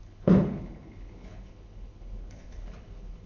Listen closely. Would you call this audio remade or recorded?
remade